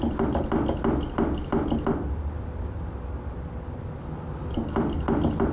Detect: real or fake real